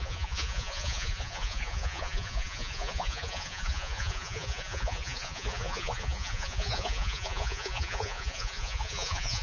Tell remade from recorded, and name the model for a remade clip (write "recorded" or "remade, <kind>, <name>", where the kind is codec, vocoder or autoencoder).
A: remade, vocoder, Vocos